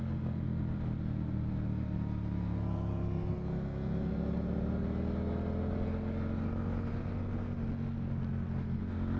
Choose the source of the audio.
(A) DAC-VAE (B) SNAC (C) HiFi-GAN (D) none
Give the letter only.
D